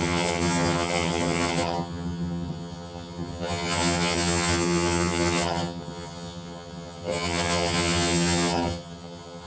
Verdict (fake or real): fake